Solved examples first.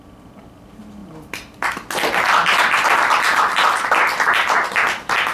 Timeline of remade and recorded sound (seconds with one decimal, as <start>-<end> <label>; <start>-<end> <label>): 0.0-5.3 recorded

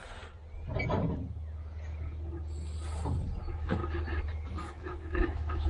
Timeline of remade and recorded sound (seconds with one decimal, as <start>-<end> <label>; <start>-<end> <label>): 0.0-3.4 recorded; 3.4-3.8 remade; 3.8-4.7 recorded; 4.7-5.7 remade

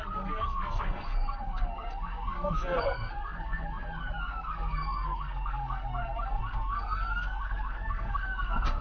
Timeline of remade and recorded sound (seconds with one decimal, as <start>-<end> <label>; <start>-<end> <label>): 0.0-8.8 remade